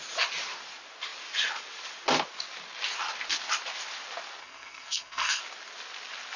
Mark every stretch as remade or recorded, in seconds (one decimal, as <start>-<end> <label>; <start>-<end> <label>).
0.0-4.4 recorded; 4.4-5.4 remade; 5.4-6.4 recorded